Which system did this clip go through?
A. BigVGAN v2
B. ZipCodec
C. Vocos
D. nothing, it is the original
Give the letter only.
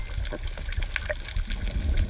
D